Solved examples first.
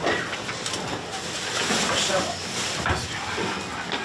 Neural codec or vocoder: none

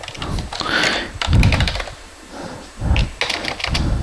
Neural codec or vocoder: none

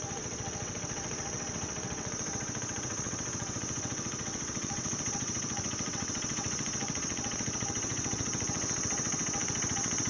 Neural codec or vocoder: vocoder, WaveNeXt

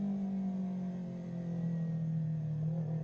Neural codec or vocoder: none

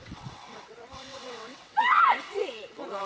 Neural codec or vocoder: vocoder, WaveNeXt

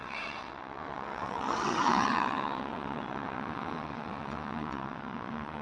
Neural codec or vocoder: vocoder, WaveNeXt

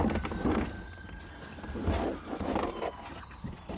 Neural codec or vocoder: none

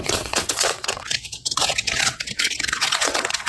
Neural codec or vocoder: vocoder, WaveNeXt